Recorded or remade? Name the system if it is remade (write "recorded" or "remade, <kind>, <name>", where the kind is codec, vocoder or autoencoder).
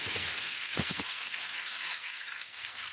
remade, codec, SNAC